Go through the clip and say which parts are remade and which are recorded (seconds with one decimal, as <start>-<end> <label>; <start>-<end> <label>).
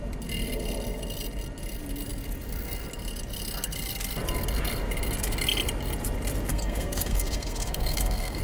0.0-6.5 recorded; 6.5-8.4 remade